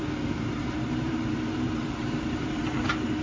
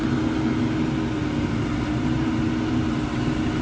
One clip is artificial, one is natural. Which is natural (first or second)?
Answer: second